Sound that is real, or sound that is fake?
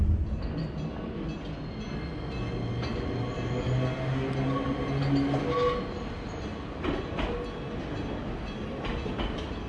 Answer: real